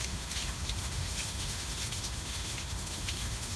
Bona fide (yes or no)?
no